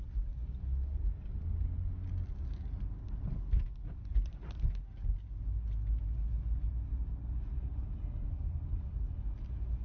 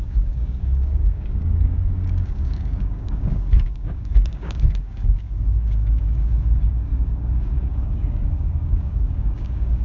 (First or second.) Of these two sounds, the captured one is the first